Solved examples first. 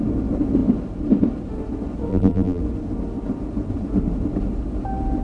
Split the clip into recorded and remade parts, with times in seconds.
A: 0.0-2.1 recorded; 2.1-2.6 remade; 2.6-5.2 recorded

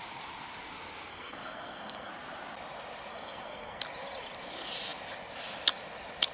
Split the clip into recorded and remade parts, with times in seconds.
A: 0.0-1.1 recorded; 1.1-2.1 remade; 2.1-3.1 recorded; 3.1-3.8 remade; 3.8-6.3 recorded

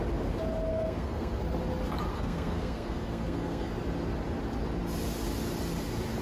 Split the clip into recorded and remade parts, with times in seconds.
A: 0.0-0.7 recorded; 0.7-1.4 remade; 1.4-2.1 recorded; 2.1-3.7 remade; 3.7-6.2 recorded

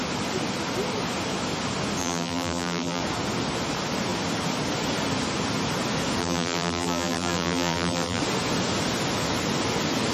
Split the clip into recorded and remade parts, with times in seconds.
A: 0.0-2.0 recorded; 2.0-3.0 remade; 3.0-6.2 recorded; 6.2-8.2 remade; 8.2-10.1 recorded

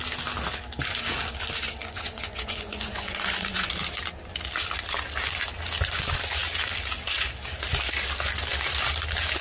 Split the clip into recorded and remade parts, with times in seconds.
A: 0.0-1.8 recorded; 1.8-3.7 remade; 3.7-9.4 recorded

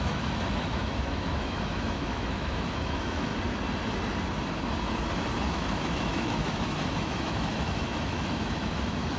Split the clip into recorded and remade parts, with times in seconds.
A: 0.0-3.3 remade; 3.3-5.5 recorded; 5.5-9.2 remade